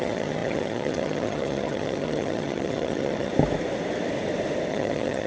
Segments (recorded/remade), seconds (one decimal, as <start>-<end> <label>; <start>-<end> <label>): 0.0-3.3 remade; 3.3-4.7 recorded; 4.7-5.3 remade